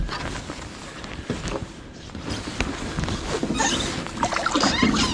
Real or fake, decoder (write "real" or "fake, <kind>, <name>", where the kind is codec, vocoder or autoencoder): real